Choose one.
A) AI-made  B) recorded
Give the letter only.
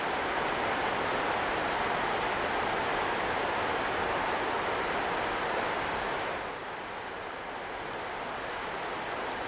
B